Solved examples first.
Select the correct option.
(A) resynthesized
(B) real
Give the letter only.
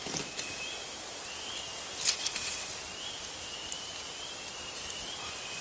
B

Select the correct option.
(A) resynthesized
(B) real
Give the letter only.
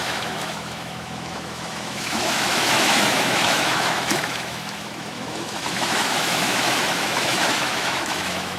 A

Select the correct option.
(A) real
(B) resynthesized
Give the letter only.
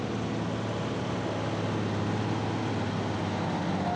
A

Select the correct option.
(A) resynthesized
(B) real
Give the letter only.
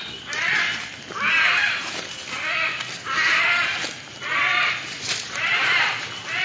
B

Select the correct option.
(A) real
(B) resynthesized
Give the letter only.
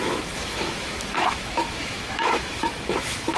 B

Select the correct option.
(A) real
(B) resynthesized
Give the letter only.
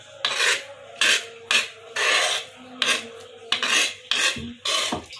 A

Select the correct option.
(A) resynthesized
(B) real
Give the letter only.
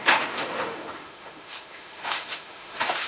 A